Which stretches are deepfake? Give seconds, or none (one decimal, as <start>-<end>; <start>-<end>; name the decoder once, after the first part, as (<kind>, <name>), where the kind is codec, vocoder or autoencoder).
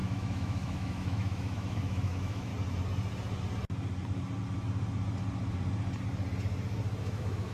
0.0-2.5 (autoencoder, DAC-VAE); 7.0-7.5